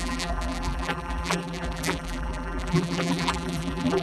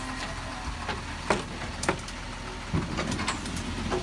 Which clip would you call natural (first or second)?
second